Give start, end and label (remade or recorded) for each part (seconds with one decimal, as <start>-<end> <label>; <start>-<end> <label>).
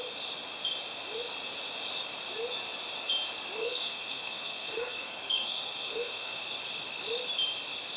0.0-3.6 recorded; 3.6-6.4 remade; 6.4-8.0 recorded